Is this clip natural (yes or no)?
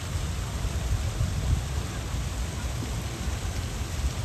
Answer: yes